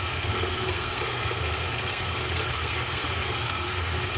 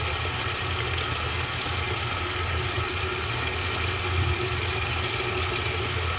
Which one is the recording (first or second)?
second